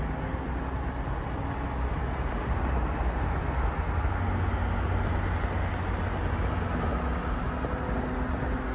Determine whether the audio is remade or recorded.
recorded